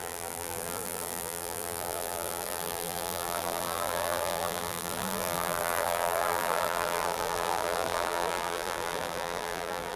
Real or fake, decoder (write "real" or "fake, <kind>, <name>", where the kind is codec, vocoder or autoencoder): fake, vocoder, BigVGAN v2